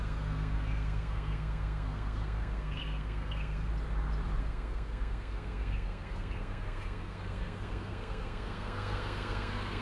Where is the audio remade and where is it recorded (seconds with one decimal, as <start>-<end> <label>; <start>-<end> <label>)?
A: 0.0-3.7 remade; 3.7-4.4 recorded; 4.4-9.8 remade